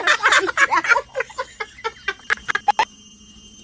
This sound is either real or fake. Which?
real